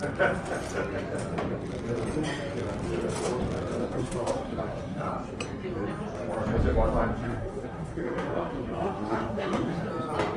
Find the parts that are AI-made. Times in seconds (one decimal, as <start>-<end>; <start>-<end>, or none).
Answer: 3.8-5.1; 7.1-9.9